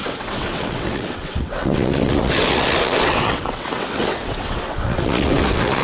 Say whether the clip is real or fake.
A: fake